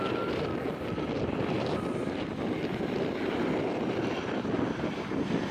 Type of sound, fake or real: fake